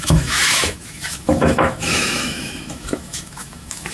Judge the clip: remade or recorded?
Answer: remade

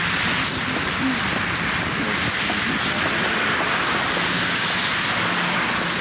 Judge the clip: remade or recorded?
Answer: recorded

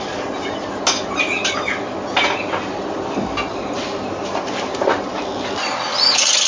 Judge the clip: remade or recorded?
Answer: recorded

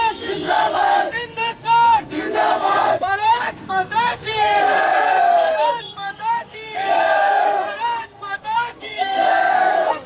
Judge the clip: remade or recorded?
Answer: remade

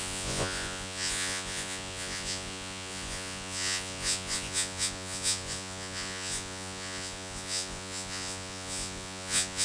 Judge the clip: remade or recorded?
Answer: remade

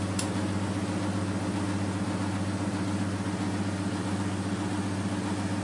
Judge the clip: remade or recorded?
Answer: recorded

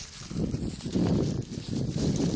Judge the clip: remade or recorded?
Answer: recorded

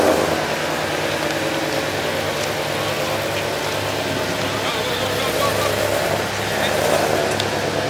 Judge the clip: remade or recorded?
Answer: recorded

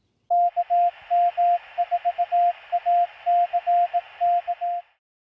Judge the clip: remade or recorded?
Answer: recorded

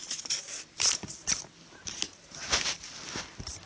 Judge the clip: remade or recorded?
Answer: recorded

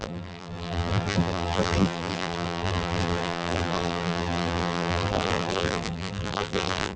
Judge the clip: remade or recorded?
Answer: remade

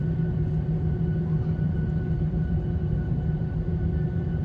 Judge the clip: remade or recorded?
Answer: remade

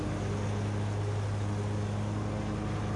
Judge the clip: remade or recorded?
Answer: recorded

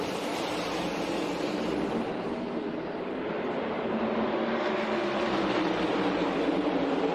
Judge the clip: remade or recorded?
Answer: remade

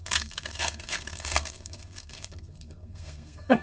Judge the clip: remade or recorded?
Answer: remade